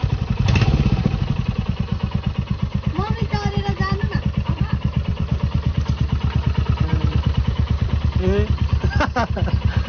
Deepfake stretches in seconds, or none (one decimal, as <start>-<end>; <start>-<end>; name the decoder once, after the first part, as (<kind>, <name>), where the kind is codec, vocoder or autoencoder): 0.0-1.9 (vocoder, BigVGAN v2); 4.2-9.9